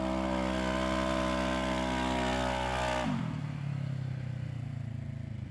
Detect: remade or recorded recorded